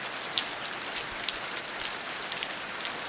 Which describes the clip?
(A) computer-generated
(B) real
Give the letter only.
B